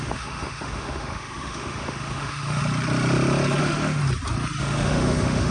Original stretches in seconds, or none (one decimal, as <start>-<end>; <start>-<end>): 2.6-3.6; 4.0-4.6